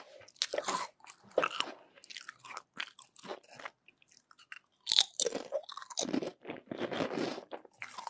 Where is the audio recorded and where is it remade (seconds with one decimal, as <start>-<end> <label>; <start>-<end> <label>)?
0.0-8.1 recorded